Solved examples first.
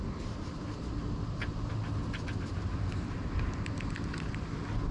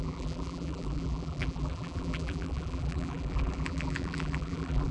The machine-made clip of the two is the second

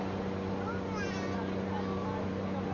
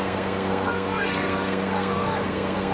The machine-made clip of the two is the second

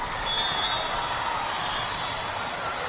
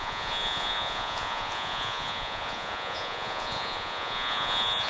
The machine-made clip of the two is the second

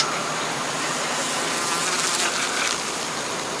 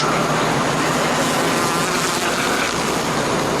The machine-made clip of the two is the first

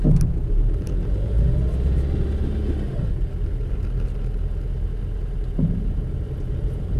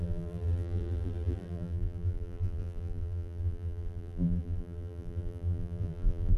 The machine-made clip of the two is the second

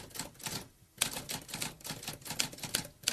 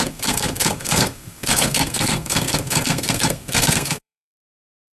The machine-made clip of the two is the second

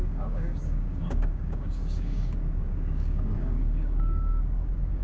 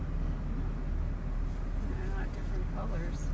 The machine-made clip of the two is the first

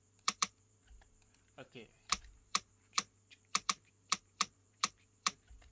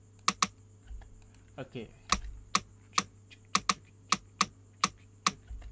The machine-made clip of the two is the first